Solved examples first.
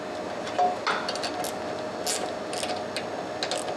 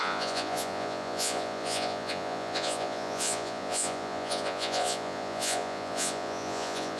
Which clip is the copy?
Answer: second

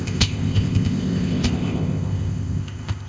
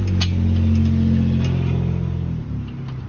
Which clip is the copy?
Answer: first